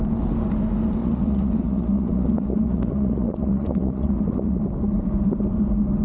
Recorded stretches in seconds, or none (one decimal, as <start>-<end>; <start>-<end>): 0.0-1.0; 4.6-6.0